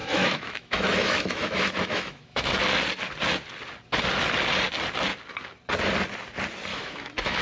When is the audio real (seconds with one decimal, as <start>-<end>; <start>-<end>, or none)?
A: 2.6-6.7